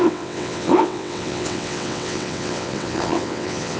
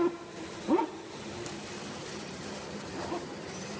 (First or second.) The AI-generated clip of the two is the first